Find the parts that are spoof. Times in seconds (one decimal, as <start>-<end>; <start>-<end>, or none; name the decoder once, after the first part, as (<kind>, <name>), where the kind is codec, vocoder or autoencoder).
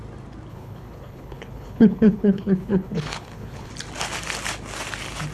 0.5-3.7 (codec, HILCodec)